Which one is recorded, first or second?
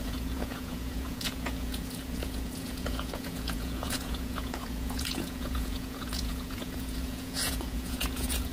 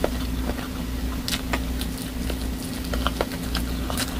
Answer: second